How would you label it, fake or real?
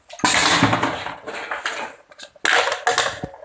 real